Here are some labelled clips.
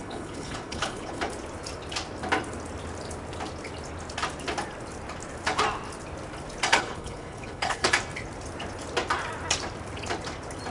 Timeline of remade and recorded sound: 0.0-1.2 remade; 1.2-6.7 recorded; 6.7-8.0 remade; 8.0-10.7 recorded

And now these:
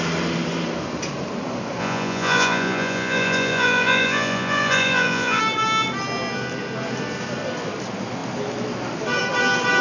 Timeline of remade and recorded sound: 0.0-1.8 recorded; 1.8-5.4 remade; 5.4-9.8 recorded

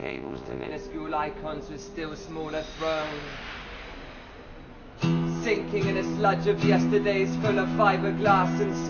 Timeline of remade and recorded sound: 0.0-0.7 remade; 0.7-8.9 recorded

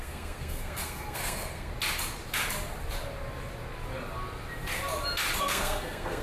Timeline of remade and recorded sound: 0.0-1.7 remade; 1.7-5.4 recorded; 5.4-6.2 remade

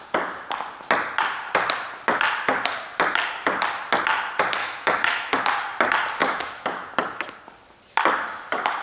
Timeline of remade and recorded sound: 0.0-4.6 recorded; 4.6-5.4 remade; 5.4-6.2 recorded; 6.2-6.9 remade; 6.9-8.8 recorded